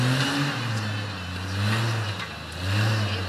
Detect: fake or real real